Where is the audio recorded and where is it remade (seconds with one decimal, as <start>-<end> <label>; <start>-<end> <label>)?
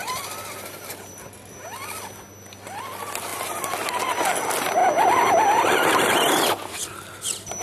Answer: 0.0-7.6 recorded